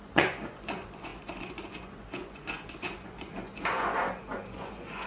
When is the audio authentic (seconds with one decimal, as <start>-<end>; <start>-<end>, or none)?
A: none